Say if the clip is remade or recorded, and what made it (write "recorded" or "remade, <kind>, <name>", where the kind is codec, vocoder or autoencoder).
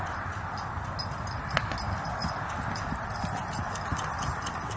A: recorded